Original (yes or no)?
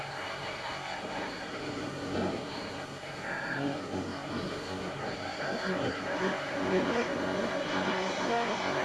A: no